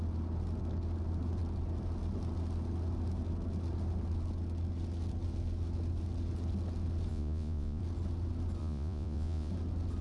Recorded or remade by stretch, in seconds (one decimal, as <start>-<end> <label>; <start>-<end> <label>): 0.0-7.1 recorded; 7.1-7.8 remade; 7.8-8.6 recorded; 8.6-9.5 remade; 9.5-10.0 recorded